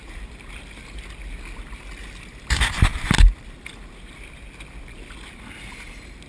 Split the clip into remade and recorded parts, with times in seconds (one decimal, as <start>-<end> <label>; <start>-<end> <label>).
0.0-6.3 recorded